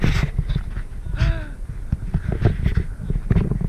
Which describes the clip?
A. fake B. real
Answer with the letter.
B